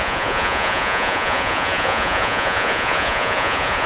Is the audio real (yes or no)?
no